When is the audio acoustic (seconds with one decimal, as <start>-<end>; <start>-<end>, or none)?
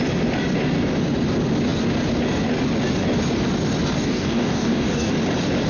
0.0-4.0; 5.1-5.7